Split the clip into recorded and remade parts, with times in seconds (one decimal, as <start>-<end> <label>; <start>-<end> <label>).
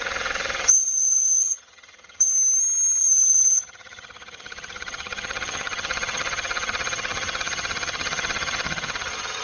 0.0-2.3 remade; 2.3-3.0 recorded; 3.0-9.4 remade